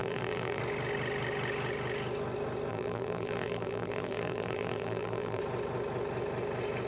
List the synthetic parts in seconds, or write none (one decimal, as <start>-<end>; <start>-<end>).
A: 0.0-0.6; 2.7-5.4